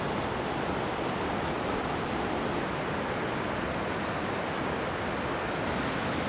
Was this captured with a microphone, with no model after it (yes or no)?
yes